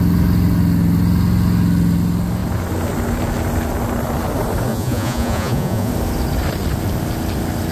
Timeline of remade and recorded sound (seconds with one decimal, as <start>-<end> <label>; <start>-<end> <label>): 0.0-4.7 recorded; 4.7-5.9 remade; 5.9-7.7 recorded